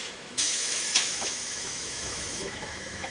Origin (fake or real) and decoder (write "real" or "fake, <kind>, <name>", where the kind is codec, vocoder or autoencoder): fake, autoencoder, DAC-VAE